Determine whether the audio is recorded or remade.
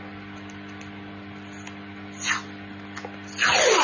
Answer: recorded